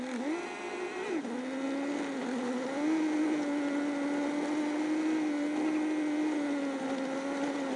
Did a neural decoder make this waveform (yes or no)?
no